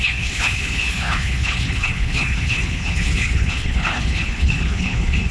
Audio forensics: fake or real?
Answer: fake